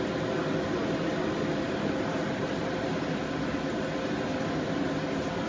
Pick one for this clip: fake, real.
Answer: real